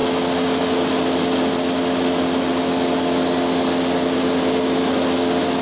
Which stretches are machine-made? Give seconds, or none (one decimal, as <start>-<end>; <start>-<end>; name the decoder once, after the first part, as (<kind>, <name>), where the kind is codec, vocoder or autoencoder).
none